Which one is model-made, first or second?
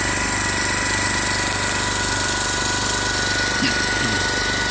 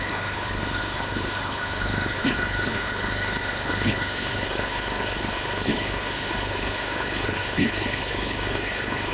second